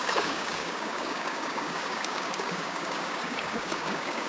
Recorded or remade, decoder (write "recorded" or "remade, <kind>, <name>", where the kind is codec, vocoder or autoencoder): remade, codec, DAC